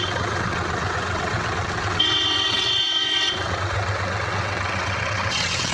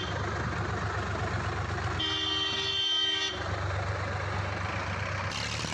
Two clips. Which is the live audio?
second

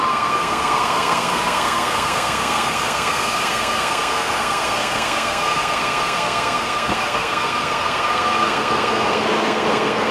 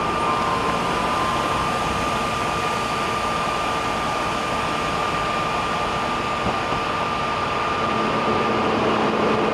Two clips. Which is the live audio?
second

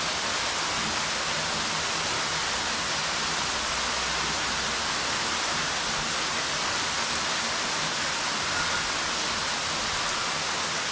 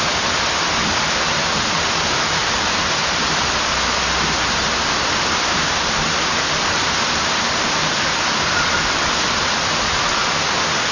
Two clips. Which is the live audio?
first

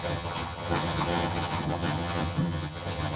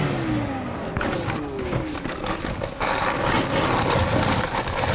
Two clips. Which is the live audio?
second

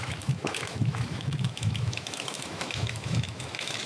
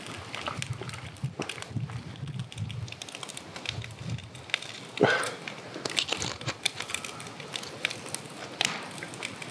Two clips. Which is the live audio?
second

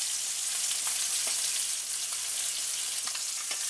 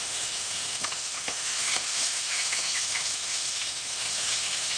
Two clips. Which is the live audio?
first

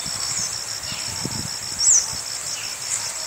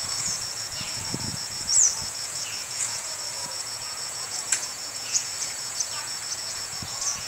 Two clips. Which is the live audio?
first